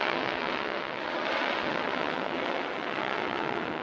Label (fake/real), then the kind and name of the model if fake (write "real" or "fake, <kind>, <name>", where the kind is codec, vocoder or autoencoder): fake, vocoder, WaveNeXt